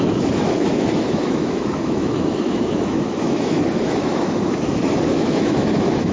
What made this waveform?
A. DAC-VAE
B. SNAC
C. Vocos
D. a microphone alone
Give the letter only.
A